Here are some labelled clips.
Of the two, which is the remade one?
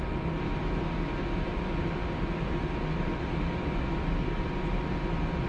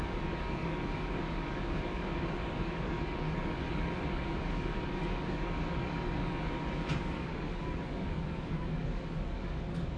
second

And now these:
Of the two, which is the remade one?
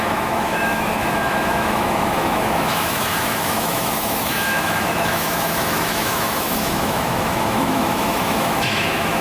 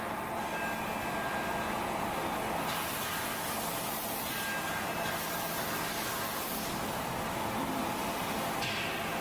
first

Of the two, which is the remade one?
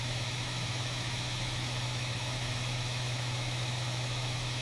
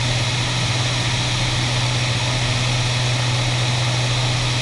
first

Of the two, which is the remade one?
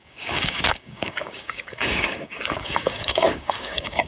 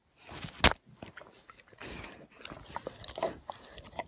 first